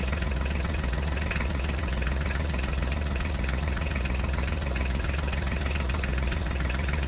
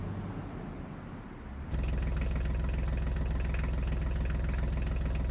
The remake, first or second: first